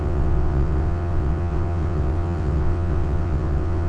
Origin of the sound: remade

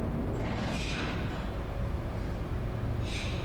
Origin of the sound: recorded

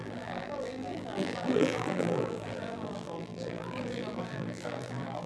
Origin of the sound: remade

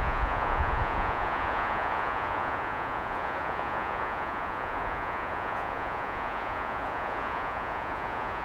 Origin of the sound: remade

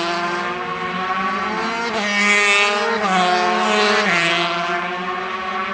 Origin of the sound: recorded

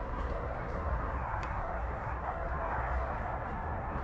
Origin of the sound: remade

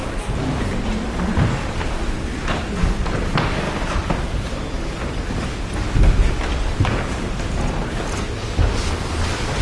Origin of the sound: recorded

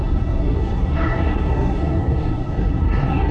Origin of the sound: remade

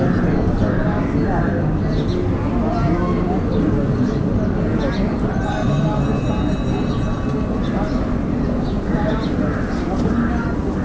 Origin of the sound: recorded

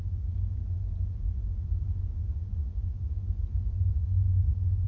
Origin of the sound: remade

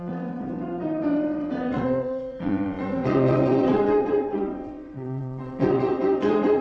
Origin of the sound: remade